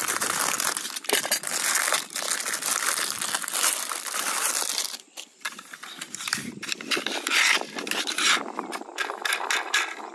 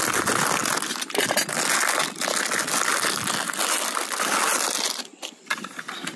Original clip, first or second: second